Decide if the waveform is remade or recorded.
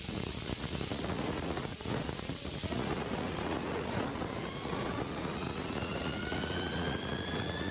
remade